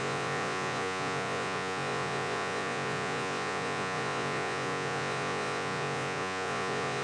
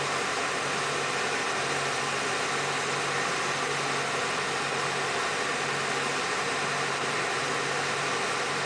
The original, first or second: second